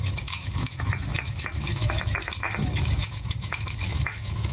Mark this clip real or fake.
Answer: fake